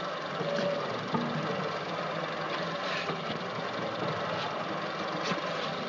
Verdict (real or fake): real